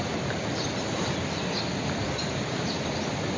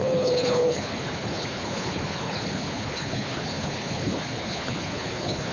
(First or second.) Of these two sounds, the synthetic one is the second